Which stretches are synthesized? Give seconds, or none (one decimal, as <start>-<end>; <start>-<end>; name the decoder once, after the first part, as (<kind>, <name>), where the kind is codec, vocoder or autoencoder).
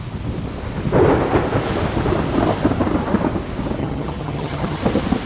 3.8-4.8 (vocoder, HiFi-GAN)